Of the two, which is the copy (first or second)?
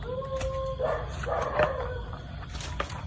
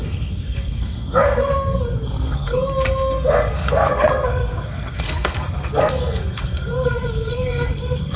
second